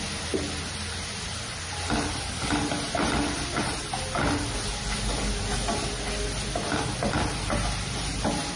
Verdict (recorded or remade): recorded